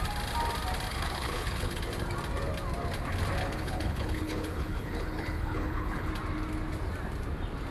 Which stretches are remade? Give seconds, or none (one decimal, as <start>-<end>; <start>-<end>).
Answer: 0.9-1.8; 3.4-6.1